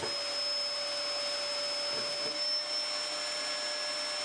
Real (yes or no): yes